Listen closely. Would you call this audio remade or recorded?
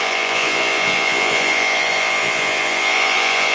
remade